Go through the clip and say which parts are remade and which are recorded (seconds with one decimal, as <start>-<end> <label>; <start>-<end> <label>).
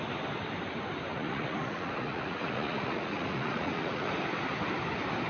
0.0-1.1 recorded; 1.1-4.1 remade; 4.1-5.3 recorded